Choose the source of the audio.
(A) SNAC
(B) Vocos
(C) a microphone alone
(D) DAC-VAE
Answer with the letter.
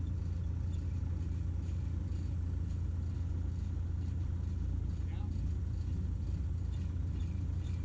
C